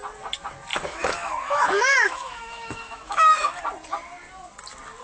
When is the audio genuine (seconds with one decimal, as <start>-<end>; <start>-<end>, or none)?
0.0-0.7; 3.6-5.0